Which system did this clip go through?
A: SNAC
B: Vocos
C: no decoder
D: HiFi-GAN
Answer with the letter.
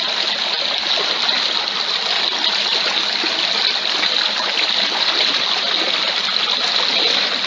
C